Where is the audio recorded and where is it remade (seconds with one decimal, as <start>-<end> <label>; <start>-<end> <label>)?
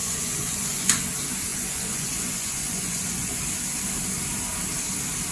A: 0.0-1.0 remade; 1.0-1.5 recorded; 1.5-3.4 remade; 3.4-5.3 recorded